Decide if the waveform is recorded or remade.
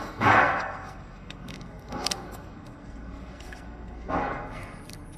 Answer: remade